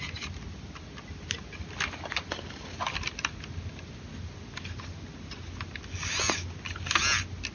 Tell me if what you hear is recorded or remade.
recorded